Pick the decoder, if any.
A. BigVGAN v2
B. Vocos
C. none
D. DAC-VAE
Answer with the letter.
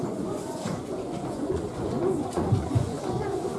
B